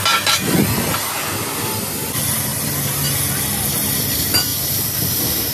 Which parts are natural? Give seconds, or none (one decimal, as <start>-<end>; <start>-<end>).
0.0-4.5